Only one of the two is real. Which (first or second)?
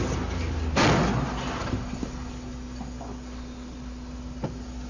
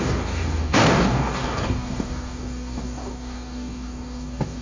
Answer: first